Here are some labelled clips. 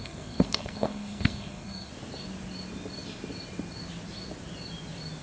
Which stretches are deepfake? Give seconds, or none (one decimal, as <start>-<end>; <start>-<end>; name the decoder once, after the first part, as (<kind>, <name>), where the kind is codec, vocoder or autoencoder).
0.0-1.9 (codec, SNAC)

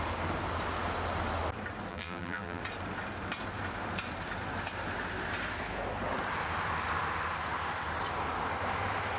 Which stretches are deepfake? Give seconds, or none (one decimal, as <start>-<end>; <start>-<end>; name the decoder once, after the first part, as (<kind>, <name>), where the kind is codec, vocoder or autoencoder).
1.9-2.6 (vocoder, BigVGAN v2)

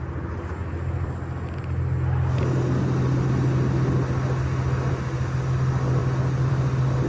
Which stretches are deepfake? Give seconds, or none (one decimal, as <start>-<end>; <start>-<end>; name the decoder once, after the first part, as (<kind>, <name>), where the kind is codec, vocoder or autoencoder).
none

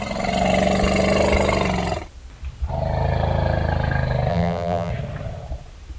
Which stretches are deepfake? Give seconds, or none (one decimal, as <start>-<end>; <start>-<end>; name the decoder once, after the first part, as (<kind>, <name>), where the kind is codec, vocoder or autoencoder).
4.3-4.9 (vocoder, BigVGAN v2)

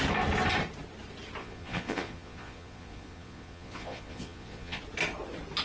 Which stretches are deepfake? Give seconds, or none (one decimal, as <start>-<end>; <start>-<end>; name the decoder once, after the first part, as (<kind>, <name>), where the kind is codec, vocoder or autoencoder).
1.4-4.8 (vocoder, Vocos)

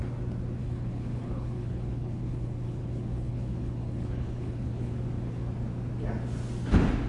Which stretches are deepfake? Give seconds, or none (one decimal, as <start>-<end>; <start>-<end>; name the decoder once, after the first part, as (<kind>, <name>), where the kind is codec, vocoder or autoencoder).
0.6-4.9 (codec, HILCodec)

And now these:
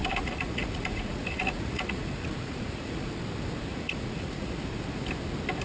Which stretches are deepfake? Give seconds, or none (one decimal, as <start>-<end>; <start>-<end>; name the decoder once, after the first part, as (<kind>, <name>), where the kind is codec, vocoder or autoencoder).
0.0-3.1 (vocoder, Vocos); 3.7-4.5